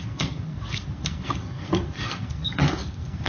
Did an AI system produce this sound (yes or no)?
yes